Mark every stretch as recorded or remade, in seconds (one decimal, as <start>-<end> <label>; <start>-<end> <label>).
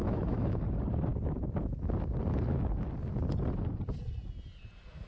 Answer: 0.0-0.6 remade; 0.6-5.1 recorded